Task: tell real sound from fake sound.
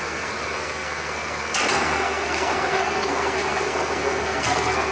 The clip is fake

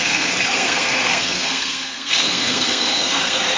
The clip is fake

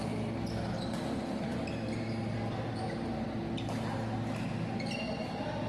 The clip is real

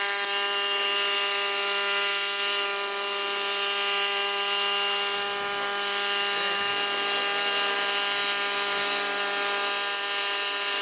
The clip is real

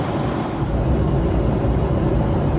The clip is real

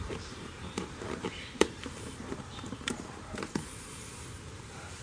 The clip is fake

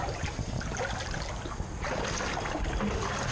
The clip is real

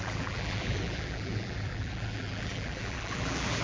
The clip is fake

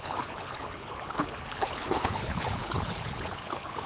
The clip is fake